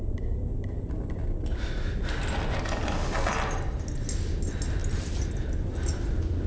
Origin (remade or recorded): recorded